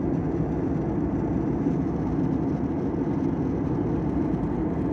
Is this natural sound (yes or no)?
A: yes